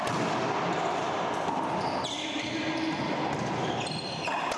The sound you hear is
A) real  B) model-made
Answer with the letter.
A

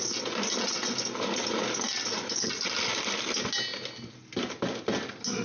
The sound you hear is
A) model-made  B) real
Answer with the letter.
B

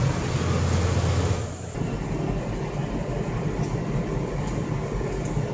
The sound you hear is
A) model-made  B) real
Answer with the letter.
B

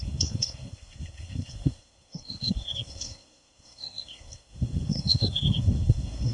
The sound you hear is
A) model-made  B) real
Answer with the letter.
A